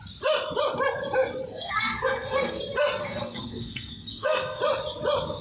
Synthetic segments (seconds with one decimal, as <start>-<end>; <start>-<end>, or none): 1.5-2.6; 3.0-4.6

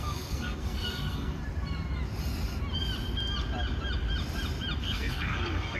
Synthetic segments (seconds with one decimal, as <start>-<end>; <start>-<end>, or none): 0.0-1.4; 4.8-5.8

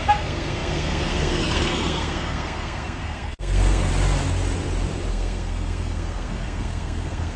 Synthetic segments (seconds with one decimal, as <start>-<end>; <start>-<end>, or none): 0.0-3.9; 5.1-7.4

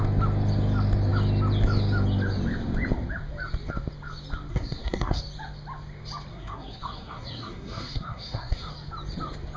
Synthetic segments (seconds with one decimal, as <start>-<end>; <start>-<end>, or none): 4.5-5.2; 6.3-8.7

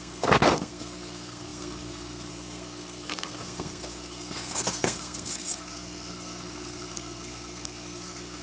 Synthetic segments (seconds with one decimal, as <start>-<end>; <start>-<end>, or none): 0.0-8.4

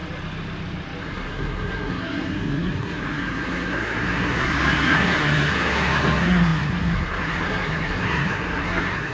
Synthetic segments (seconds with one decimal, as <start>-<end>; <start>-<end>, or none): 1.0-9.1

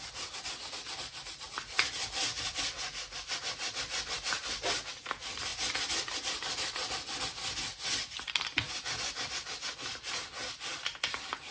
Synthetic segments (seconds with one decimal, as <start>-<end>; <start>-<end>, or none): none

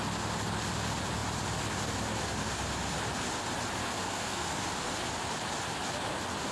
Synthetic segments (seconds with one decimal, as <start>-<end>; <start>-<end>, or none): 3.8-4.6